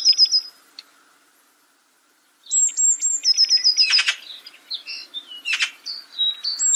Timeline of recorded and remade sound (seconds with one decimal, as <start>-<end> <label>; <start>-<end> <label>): 0.0-6.8 recorded